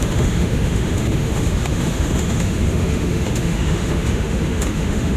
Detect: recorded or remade remade